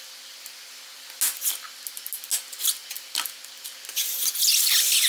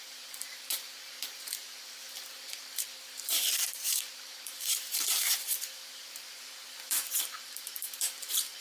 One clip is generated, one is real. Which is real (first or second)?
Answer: first